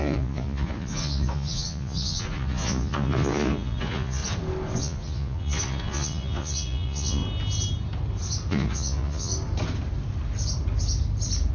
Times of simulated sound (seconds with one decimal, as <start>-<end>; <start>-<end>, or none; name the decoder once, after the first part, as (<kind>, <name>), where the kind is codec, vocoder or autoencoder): 0.0-4.2 (vocoder, Vocos); 4.8-7.2; 8.5-9.3